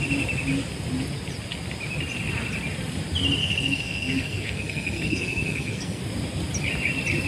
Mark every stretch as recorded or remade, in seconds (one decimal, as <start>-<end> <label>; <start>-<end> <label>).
0.0-3.4 recorded; 3.4-6.0 remade; 6.0-7.3 recorded